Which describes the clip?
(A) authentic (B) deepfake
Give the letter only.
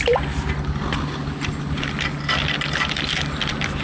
A